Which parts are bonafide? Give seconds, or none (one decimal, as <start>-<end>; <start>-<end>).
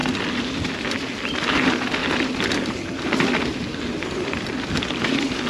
0.0-5.5